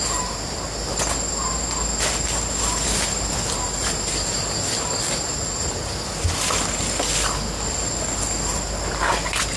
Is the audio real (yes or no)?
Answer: yes